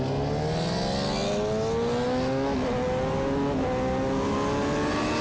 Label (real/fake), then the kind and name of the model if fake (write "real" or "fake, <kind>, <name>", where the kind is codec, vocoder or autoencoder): real